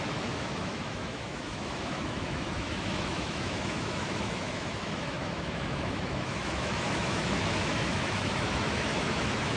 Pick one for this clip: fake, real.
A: fake